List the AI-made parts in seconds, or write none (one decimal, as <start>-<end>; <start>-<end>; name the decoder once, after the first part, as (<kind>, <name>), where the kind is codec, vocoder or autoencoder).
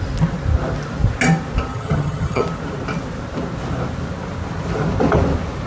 1.7-2.4 (vocoder, HiFi-GAN)